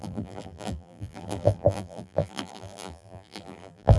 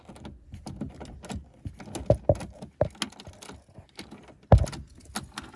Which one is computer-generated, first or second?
first